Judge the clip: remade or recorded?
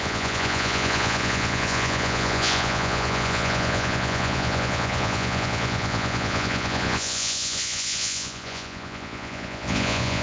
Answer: remade